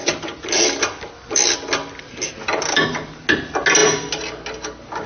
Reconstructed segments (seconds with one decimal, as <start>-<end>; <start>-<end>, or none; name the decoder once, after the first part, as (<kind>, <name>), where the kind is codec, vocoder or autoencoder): none